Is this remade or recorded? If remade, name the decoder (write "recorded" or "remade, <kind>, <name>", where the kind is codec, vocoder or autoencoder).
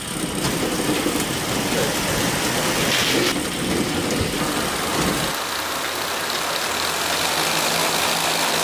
recorded